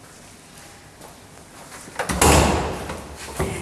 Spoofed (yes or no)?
no